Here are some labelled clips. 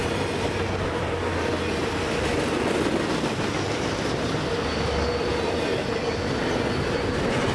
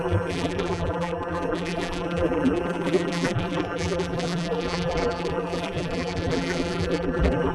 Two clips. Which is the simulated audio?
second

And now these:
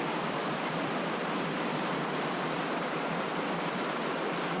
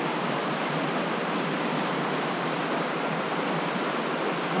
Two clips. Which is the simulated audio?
first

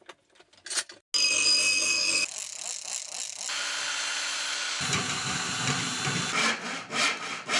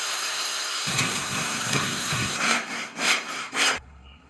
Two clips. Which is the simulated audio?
second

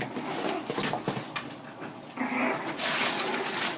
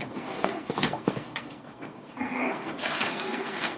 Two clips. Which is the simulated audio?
second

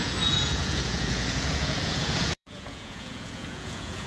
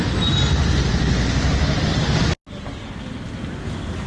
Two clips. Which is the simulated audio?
first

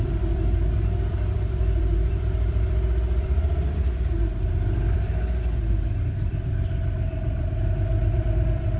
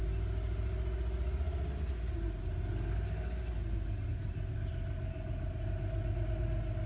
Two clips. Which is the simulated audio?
first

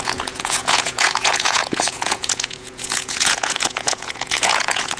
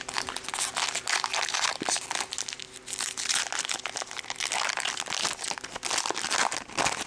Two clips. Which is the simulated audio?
first